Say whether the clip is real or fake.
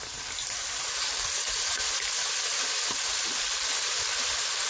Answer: real